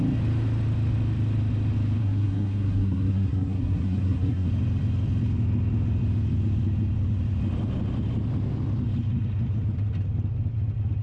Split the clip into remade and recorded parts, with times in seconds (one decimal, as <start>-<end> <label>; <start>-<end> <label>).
0.0-2.0 recorded; 2.0-4.5 remade; 4.5-11.0 recorded